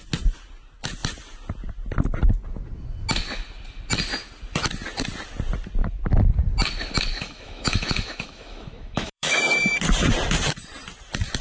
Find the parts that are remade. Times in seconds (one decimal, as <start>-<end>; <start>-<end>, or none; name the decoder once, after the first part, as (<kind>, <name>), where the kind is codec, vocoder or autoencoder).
7.1-9.4 (autoencoder, DAC-VAE)